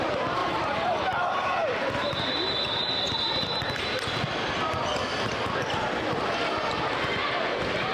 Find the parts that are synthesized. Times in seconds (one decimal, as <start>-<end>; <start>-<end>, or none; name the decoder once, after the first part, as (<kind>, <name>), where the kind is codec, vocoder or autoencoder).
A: 0.0-7.9 (vocoder, BigVGAN v2)